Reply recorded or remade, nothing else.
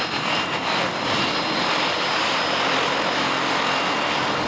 recorded